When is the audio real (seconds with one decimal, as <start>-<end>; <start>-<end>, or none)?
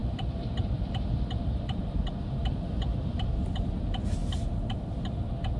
3.4-4.2; 4.8-5.6